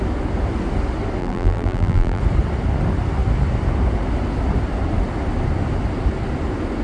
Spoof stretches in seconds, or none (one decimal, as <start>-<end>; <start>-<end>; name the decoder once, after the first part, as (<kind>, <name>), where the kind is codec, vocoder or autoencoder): 1.2-2.2 (vocoder, BigVGAN v2)

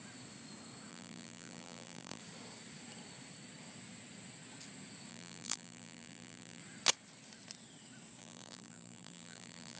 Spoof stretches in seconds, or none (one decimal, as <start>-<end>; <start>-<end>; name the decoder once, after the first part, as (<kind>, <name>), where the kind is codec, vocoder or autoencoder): 0.9-2.2 (vocoder, BigVGAN v2); 5.1-6.6; 8.2-9.8

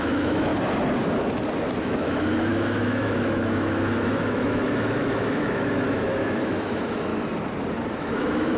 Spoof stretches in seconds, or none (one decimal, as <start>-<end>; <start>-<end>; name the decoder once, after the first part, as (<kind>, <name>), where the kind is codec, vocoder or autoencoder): 0.0-0.5 (autoencoder, DAC-VAE); 1.8-7.1; 8.0-8.6

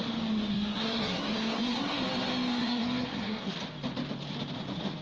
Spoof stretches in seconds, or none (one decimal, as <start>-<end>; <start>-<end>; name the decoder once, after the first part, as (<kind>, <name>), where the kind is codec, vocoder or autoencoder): 0.5-2.0 (codec, SNAC); 2.6-3.5